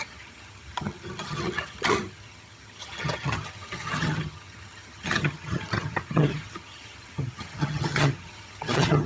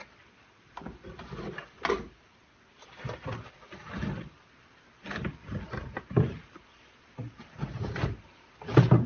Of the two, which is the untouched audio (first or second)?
second